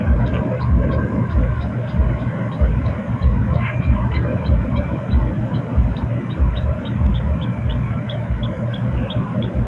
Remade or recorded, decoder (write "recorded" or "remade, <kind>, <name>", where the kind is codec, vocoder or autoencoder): remade, codec, DAC